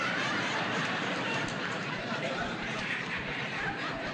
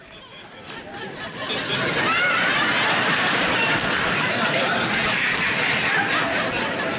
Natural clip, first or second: second